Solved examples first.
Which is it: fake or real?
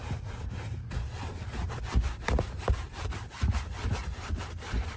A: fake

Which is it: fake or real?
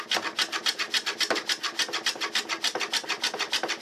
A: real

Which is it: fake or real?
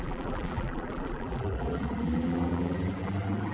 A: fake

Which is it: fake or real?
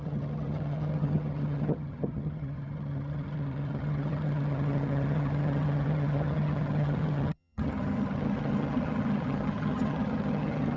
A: fake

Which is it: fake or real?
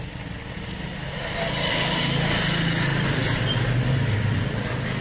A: real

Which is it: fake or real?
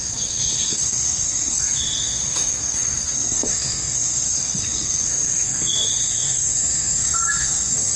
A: fake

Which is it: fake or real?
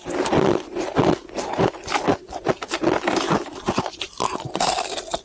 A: real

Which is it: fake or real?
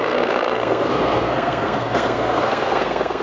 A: fake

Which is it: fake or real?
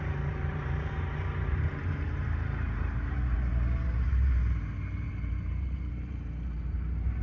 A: fake